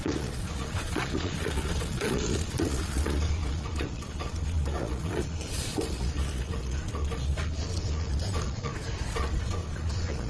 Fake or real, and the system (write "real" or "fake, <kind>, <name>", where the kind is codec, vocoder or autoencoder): fake, vocoder, Vocos